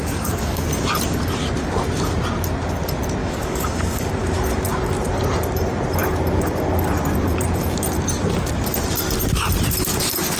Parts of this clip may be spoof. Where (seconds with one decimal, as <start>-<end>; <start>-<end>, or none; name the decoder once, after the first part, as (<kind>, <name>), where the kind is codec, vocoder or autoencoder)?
0.0-0.6 (codec, DAC); 3.2-4.1